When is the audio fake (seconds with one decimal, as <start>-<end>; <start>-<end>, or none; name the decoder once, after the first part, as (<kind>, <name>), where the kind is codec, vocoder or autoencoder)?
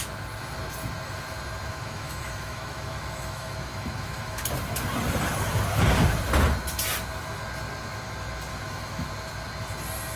1.7-4.4 (autoencoder, DAC-VAE); 8.5-9.1